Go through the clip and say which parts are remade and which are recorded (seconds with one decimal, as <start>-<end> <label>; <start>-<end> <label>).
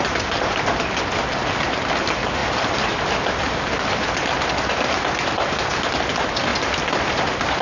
0.0-2.4 recorded; 2.4-3.4 remade; 3.4-6.5 recorded; 6.5-7.6 remade